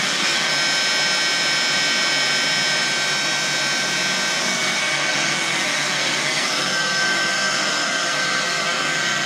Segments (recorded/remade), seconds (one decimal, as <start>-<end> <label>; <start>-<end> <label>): 0.0-0.5 remade; 0.5-4.4 recorded; 4.4-9.3 remade